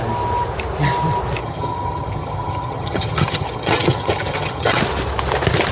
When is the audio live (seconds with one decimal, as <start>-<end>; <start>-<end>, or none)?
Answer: 0.0-1.4; 4.8-5.7